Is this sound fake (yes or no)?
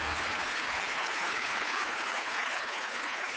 yes